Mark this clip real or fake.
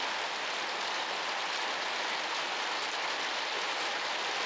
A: real